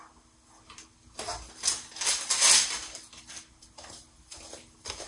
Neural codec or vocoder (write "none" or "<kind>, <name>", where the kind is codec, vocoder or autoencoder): none